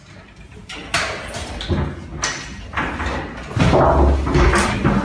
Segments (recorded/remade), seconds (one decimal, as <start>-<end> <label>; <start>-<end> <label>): 0.0-5.0 recorded